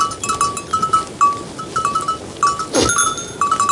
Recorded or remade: recorded